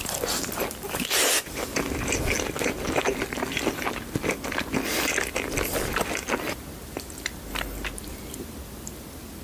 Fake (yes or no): no